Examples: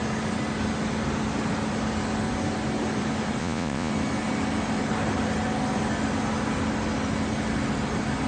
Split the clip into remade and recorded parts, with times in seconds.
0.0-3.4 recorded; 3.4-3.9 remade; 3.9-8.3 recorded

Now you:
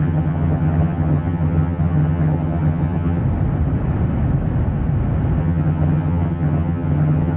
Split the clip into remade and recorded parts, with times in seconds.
0.0-3.2 remade; 3.2-5.4 recorded; 5.4-7.4 remade

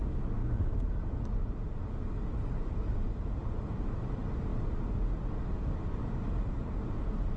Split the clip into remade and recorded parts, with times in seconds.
0.0-7.4 recorded

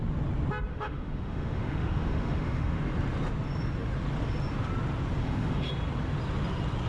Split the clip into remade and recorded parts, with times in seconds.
0.0-0.7 recorded; 0.7-2.8 remade; 2.8-5.2 recorded; 5.2-5.7 remade; 5.7-6.9 recorded

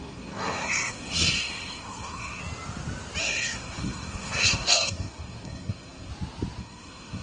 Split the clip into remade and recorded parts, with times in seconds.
0.0-2.4 remade; 2.4-3.2 recorded; 3.2-6.1 remade; 6.1-6.6 recorded; 6.6-7.2 remade

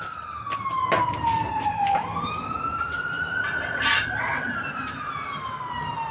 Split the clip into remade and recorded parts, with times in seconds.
0.0-1.5 recorded; 1.5-5.1 remade; 5.1-6.1 recorded

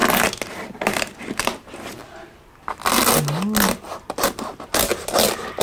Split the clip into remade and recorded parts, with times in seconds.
0.0-0.5 recorded; 0.5-2.0 remade; 2.0-5.6 recorded